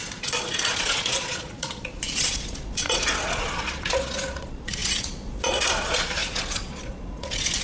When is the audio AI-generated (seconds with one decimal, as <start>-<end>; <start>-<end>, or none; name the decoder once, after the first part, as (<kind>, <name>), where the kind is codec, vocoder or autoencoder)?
0.0-7.6 (vocoder, Vocos)